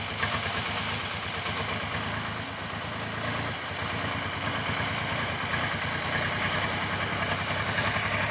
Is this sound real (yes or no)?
yes